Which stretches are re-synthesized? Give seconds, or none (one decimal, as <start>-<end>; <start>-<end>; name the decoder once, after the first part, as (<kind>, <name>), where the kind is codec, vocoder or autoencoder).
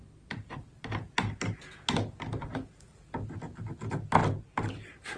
none